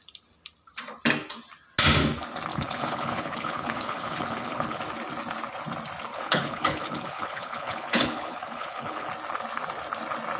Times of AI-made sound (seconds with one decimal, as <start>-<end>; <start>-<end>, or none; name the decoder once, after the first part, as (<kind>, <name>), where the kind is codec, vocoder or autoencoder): 2.5-4.8 (codec, HILCodec); 6.1-9.1